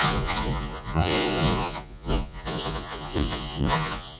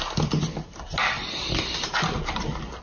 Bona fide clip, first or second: second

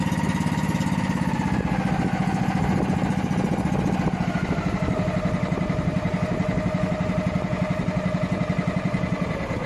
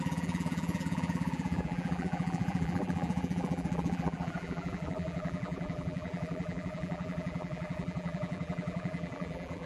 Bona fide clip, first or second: first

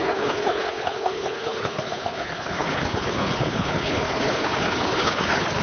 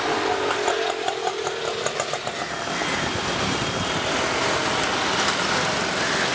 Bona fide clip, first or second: second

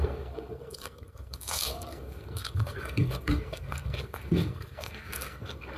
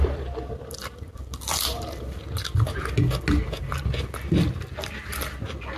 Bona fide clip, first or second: second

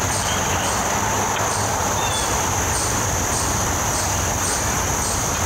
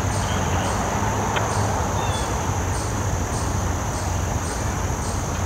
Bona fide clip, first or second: second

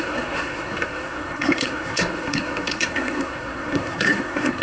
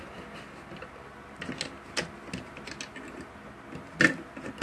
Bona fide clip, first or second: second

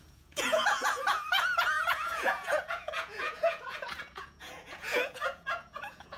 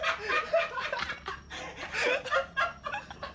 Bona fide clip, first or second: second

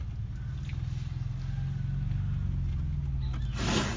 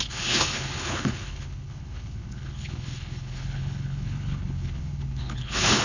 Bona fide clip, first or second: first